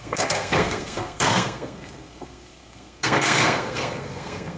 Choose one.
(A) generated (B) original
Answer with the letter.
A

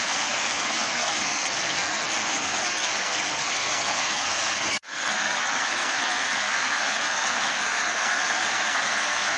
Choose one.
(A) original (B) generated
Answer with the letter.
B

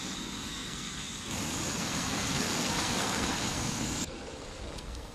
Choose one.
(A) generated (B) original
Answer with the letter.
A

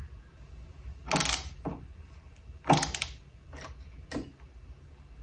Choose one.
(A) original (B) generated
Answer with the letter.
A